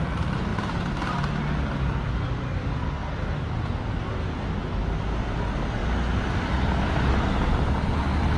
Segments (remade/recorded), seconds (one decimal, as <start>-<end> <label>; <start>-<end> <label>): 0.0-8.4 recorded